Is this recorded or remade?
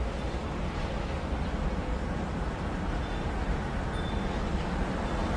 remade